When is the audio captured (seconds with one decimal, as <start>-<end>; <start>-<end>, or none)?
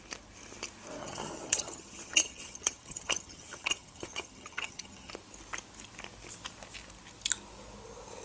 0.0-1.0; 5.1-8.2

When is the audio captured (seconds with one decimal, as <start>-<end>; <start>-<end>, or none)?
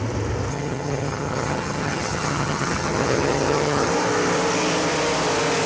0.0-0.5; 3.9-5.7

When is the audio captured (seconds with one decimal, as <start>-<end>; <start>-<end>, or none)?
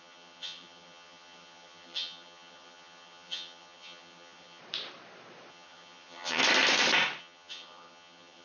4.6-5.5; 6.4-7.2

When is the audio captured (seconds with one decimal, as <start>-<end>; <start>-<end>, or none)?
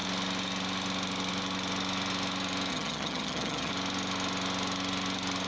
0.0-2.7; 3.7-5.5